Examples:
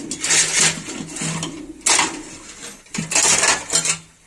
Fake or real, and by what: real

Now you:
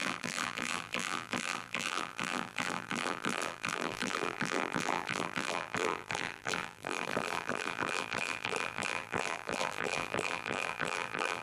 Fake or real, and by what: fake, vocoder, BigVGAN v2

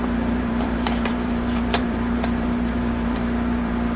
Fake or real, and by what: fake, vocoder, BigVGAN v2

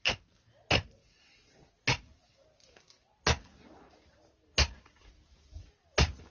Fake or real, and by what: real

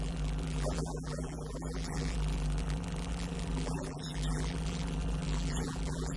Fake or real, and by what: fake, vocoder, BigVGAN v2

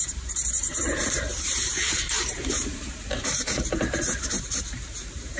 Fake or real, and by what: fake, vocoder, BigVGAN v2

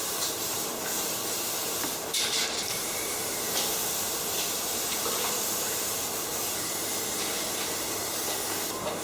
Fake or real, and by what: fake, vocoder, BigVGAN v2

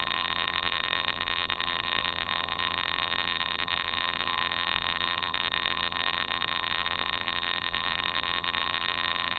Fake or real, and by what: fake, vocoder, BigVGAN v2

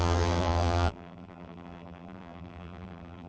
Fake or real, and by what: fake, vocoder, BigVGAN v2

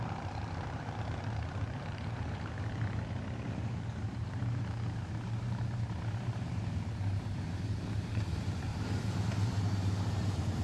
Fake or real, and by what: fake, vocoder, BigVGAN v2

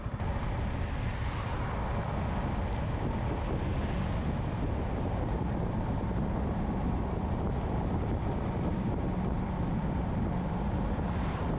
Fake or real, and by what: real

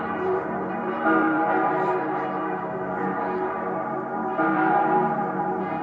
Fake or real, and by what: fake, vocoder, BigVGAN v2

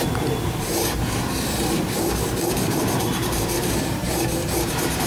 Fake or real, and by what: fake, vocoder, BigVGAN v2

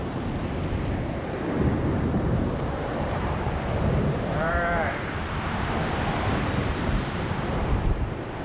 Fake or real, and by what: fake, vocoder, BigVGAN v2